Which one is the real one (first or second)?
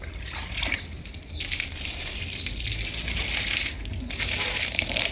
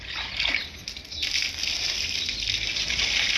second